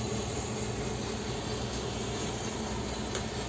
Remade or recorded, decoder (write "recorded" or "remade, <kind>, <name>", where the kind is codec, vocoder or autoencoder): recorded